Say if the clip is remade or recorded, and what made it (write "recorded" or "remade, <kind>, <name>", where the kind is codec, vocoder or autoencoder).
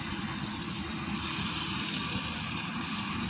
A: recorded